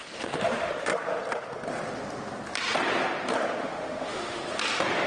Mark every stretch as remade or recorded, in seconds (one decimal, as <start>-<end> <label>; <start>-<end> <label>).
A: 0.0-0.9 remade; 0.9-3.6 recorded; 3.6-4.4 remade; 4.4-5.1 recorded